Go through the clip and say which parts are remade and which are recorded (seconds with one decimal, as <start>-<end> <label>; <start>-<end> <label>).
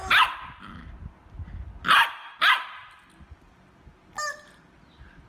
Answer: 0.0-5.3 recorded